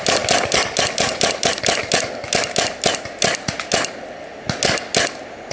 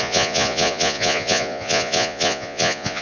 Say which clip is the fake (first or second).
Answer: second